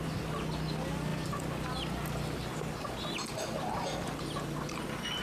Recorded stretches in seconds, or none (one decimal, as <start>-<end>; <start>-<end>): 0.0-5.2